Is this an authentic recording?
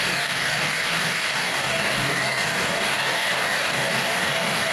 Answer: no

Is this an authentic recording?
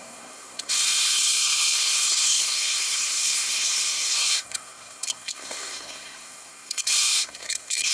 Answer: no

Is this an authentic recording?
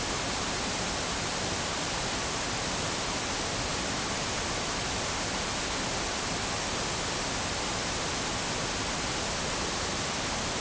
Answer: yes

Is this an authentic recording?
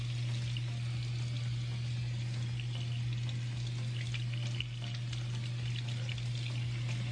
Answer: yes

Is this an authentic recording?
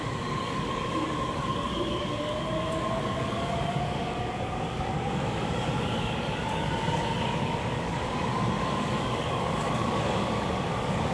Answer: no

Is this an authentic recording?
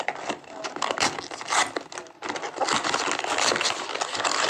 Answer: yes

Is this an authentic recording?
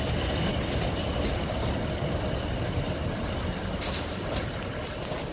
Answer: yes